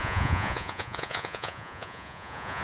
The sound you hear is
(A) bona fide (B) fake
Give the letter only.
B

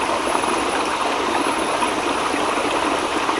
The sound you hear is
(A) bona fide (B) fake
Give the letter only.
A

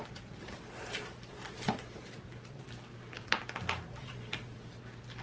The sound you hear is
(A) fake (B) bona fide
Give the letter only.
B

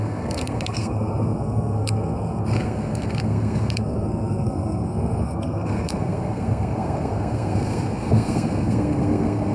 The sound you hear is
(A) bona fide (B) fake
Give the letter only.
B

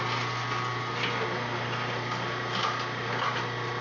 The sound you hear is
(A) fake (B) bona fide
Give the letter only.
B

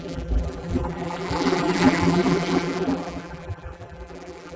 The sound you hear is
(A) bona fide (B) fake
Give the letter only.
B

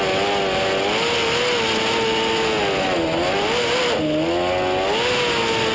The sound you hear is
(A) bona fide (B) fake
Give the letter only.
A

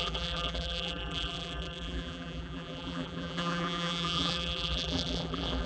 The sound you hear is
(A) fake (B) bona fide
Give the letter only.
A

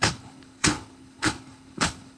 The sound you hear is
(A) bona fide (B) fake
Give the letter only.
B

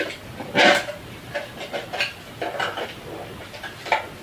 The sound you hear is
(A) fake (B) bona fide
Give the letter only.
B